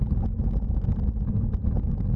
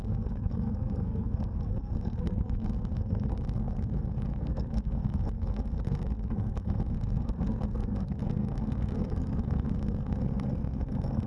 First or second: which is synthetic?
second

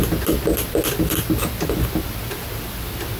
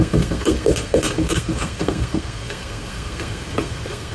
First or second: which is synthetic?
second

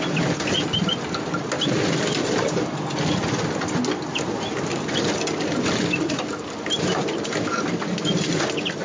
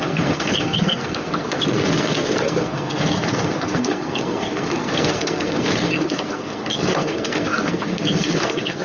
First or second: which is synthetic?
second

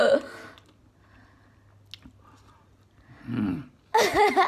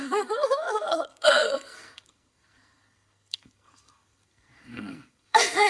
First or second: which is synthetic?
second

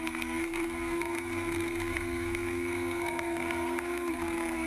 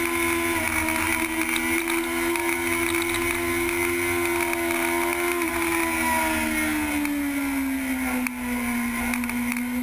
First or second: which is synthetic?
first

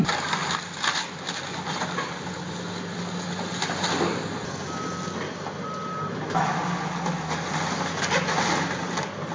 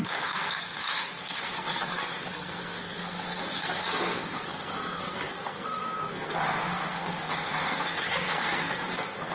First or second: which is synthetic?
second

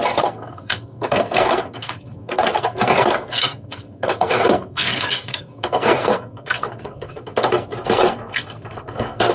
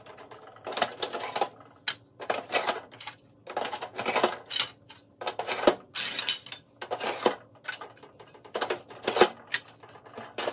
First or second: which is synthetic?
first